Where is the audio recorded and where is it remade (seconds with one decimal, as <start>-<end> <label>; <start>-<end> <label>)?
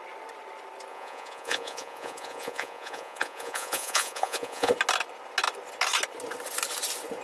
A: 0.0-0.9 recorded; 0.9-4.7 remade; 4.7-7.2 recorded